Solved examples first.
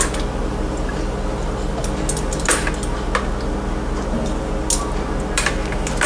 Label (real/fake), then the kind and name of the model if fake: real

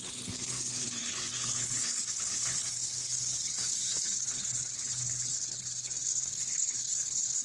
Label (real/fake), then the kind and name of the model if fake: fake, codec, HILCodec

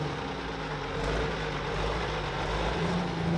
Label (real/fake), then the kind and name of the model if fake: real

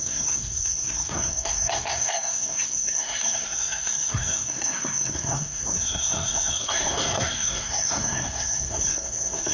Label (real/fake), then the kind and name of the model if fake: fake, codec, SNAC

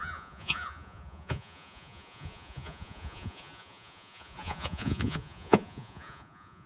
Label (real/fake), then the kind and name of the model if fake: fake, vocoder, Vocos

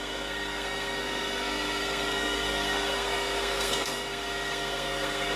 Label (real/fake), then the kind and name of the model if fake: fake, codec, SNAC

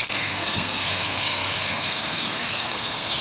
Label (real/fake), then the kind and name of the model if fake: fake, codec, SNAC